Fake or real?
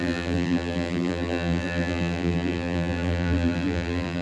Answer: fake